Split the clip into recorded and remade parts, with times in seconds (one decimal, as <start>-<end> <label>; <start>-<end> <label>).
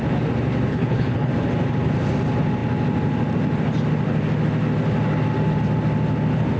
0.0-0.7 recorded; 0.7-1.3 remade; 1.3-6.6 recorded